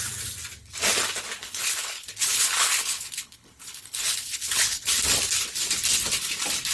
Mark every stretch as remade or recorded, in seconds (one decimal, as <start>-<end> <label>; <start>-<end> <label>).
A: 0.0-1.4 recorded; 1.4-4.9 remade; 4.9-6.7 recorded